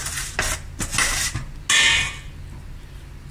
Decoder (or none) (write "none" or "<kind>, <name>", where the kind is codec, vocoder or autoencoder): none